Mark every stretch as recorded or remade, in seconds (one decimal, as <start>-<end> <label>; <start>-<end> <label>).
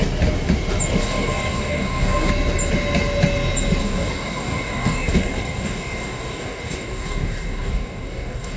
0.0-1.0 recorded; 1.0-2.3 remade; 2.3-3.8 recorded; 3.8-8.6 remade